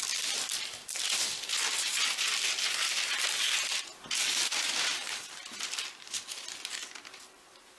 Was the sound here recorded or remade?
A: recorded